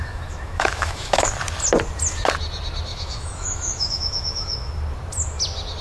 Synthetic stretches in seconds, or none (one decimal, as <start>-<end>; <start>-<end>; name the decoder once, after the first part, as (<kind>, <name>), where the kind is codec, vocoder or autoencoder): 0.0-1.3 (autoencoder, DAC-VAE); 2.9-4.7